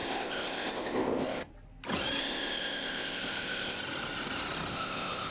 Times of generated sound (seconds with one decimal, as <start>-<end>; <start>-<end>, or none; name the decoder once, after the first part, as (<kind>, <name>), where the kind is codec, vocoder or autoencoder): 0.0-1.5 (codec, ZipCodec); 2.2-3.8; 4.7-5.3